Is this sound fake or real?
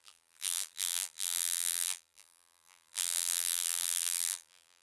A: fake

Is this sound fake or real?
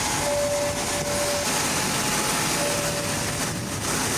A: real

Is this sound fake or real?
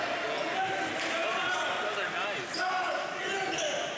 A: real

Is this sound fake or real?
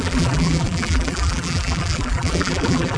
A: fake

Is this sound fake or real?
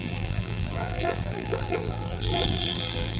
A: fake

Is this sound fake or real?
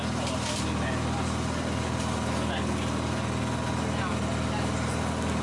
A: real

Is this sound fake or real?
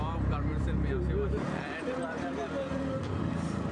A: fake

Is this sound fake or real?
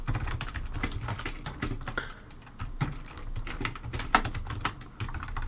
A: real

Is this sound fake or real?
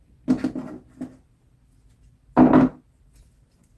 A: real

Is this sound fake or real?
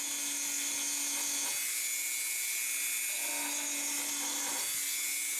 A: real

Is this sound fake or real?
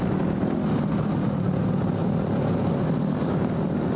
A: fake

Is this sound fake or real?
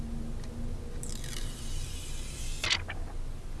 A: real